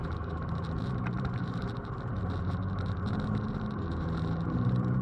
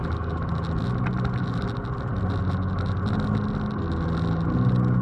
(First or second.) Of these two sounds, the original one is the second